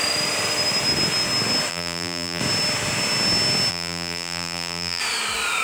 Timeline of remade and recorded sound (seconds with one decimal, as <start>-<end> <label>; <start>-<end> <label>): 0.0-1.7 recorded; 1.7-2.4 remade; 2.4-3.7 recorded; 3.7-5.0 remade; 5.0-5.6 recorded